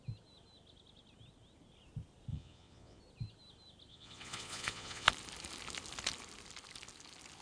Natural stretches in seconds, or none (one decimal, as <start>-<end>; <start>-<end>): 0.0-2.3; 3.0-3.9; 5.1-7.4